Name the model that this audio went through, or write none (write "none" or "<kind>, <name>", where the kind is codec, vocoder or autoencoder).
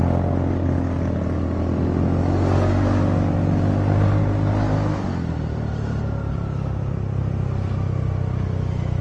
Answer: none